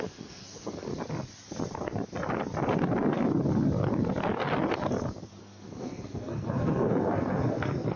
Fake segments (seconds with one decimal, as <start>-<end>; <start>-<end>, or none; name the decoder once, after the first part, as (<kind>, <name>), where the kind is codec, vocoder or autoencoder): 0.0-0.9 (codec, SNAC); 5.4-8.0